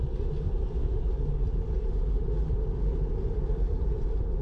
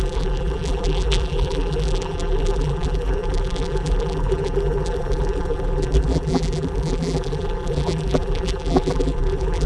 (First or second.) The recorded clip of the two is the first